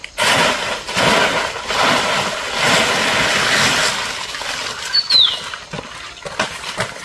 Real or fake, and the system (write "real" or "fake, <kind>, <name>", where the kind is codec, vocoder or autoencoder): real